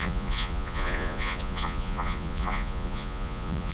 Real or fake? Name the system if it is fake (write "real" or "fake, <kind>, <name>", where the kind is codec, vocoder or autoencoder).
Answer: fake, vocoder, Vocos